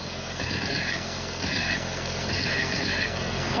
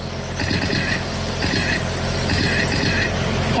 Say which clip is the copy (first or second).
first